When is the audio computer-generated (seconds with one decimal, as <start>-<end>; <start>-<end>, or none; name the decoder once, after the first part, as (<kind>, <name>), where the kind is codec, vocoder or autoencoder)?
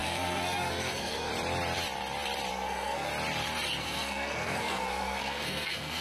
0.0-1.3 (codec, SNAC); 2.5-3.1; 3.8-6.0